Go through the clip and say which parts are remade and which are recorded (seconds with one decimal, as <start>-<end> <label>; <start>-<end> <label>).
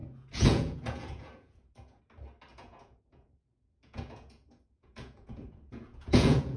0.0-2.0 remade; 2.0-2.5 recorded; 2.5-6.6 remade